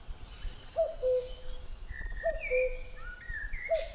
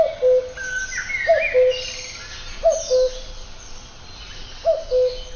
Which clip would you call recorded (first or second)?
second